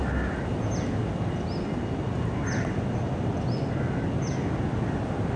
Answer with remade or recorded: recorded